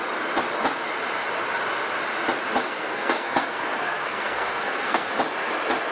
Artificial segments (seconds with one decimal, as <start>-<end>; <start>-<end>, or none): 2.6-5.1